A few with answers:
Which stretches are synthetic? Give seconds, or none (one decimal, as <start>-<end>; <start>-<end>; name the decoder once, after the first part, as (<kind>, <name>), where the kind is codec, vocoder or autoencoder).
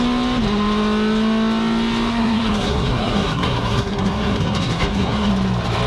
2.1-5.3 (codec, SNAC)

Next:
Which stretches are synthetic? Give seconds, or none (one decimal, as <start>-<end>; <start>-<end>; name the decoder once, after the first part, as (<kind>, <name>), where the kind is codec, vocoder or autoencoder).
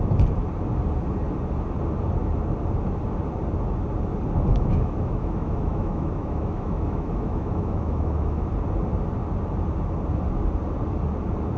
4.5-8.5 (autoencoder, DAC-VAE)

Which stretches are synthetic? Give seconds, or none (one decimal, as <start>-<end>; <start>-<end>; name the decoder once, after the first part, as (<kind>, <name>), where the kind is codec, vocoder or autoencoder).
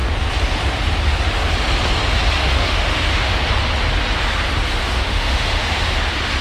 2.4-3.5 (autoencoder, DAC-VAE); 4.8-5.9